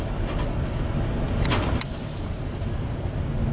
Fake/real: real